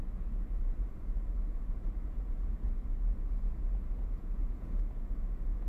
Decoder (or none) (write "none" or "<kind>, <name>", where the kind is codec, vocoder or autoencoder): vocoder, Vocos